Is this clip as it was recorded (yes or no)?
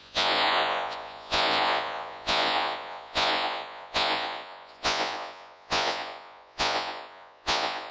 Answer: no